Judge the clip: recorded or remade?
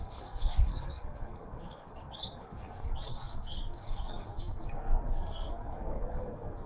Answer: remade